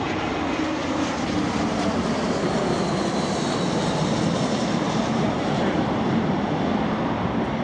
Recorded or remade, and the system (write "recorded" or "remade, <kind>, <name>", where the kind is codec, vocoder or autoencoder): recorded